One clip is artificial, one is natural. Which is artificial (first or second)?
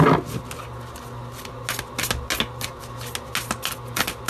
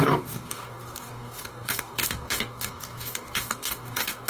second